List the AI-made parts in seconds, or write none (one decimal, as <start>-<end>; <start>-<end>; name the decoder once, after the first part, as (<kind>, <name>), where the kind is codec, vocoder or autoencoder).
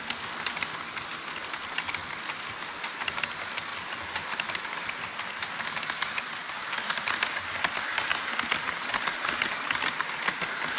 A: 8.1-8.9 (vocoder, BigVGAN v2)